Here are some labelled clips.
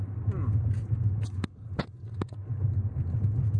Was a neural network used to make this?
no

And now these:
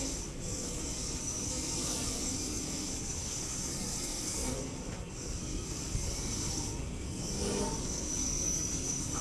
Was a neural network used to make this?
yes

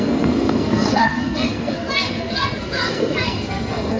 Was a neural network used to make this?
yes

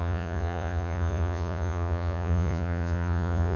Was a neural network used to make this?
yes